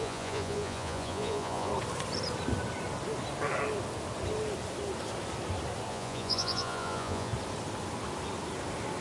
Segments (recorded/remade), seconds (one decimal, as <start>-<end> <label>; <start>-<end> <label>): 0.0-1.7 remade; 1.7-5.9 recorded; 5.9-7.3 remade; 7.3-9.0 recorded